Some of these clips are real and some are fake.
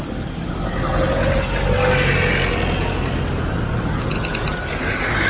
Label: real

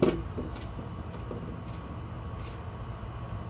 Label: real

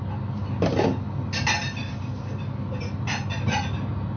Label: real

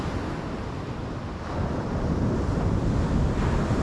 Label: real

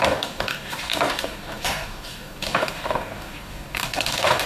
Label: fake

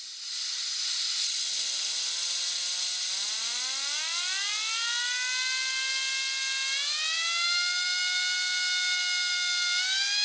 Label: real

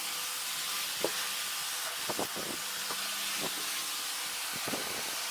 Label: real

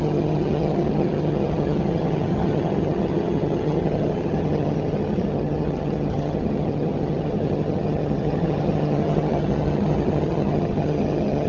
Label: fake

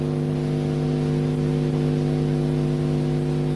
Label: real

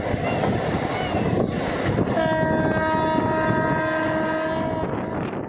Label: real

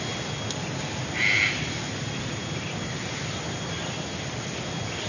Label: real